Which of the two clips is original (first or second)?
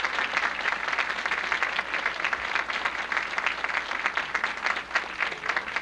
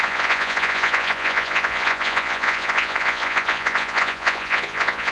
first